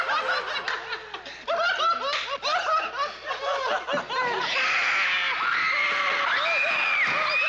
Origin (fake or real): real